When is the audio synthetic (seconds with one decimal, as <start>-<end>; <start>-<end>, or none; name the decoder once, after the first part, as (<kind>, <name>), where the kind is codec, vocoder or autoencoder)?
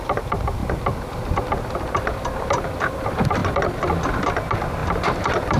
none